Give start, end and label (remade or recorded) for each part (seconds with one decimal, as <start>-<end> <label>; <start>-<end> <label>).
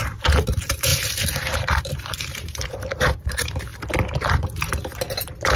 0.0-3.7 remade; 3.7-4.8 recorded; 4.8-5.6 remade